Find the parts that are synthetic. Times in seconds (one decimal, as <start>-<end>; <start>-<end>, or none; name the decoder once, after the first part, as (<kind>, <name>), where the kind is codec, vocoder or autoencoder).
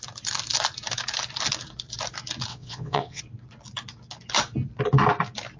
2.5-3.2 (vocoder, WaveNeXt)